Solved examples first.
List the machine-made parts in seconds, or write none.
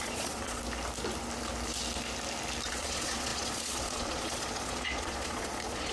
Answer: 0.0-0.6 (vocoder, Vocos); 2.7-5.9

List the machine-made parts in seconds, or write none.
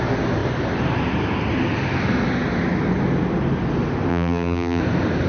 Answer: 4.1-4.8 (vocoder, BigVGAN v2)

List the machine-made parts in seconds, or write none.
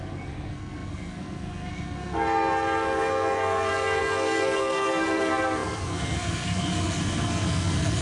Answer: 0.0-8.0 (codec, SNAC)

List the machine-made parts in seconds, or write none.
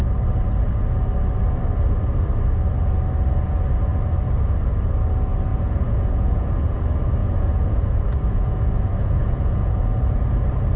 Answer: 5.5-6.8 (vocoder, Vocos); 7.2-10.2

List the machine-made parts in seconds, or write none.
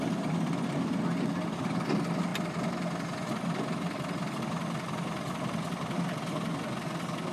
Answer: none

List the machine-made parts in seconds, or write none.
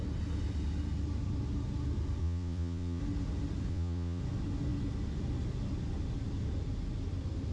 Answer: 2.2-3.0 (vocoder, Vocos); 3.7-4.2